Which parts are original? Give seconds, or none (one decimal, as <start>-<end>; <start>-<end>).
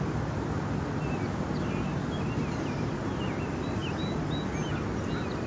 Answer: 0.0-5.5